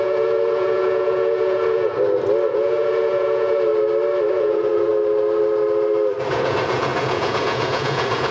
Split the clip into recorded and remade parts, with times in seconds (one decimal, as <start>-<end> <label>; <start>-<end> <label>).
0.0-1.9 remade; 1.9-2.5 recorded; 2.5-3.7 remade; 3.7-4.3 recorded; 4.3-4.9 remade; 4.9-6.3 recorded; 6.3-8.3 remade